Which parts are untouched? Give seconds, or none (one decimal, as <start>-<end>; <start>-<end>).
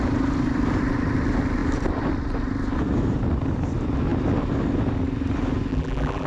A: 0.0-5.7